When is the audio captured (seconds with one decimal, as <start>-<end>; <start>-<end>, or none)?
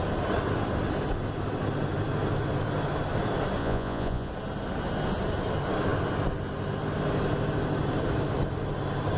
0.0-3.6; 4.3-9.2